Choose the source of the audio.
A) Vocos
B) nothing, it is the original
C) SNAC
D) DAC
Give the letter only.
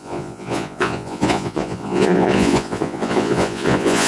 A